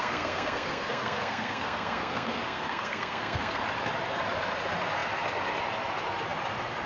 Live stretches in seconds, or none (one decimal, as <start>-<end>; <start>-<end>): 3.6-6.9